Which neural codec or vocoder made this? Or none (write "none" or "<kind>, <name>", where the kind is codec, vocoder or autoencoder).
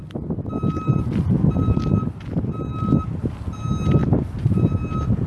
none